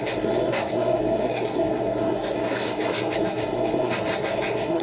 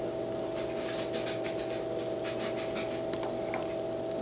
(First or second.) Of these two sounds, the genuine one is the second